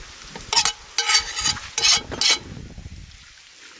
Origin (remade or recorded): recorded